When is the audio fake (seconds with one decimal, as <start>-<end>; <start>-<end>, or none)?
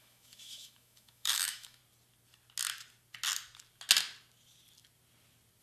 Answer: 0.0-1.8